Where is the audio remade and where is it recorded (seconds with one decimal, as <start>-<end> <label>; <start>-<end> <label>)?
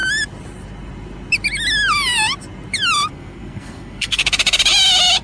0.0-3.1 recorded; 3.1-4.2 remade; 4.2-5.2 recorded